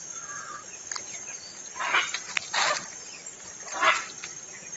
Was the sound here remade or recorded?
recorded